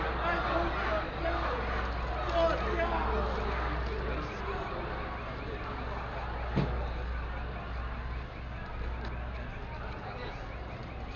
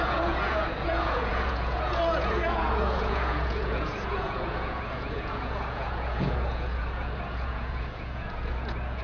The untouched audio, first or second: first